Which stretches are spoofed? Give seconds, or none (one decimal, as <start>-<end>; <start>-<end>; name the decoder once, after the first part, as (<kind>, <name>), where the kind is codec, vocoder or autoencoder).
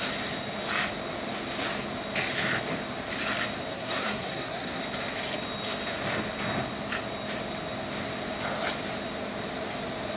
3.7-4.8 (codec, SNAC)